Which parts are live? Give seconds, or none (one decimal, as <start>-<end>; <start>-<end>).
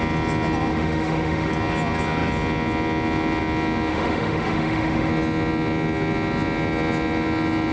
0.0-0.7; 1.5-3.9; 5.1-7.7